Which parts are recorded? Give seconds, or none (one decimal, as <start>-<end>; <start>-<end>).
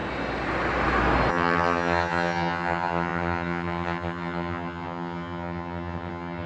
0.0-1.3